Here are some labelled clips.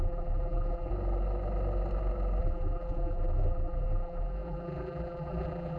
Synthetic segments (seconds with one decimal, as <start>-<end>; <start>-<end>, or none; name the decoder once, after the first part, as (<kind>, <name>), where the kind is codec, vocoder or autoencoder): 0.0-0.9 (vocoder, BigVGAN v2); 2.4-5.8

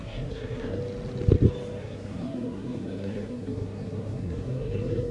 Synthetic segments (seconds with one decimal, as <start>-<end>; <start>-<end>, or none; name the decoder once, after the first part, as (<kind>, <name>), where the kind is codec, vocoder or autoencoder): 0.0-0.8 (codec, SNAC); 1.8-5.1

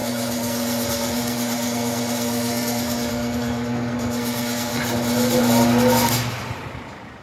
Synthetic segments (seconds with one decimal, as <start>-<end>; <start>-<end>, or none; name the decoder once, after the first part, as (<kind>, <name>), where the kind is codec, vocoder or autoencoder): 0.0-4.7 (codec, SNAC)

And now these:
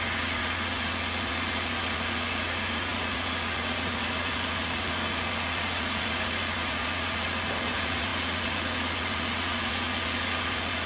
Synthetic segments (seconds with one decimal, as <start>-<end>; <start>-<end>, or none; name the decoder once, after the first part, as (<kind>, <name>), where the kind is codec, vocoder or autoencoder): 0.0-10.9 (vocoder, Vocos)